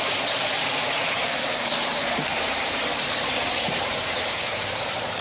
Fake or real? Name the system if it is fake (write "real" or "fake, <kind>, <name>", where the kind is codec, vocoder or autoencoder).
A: fake, vocoder, BigVGAN v2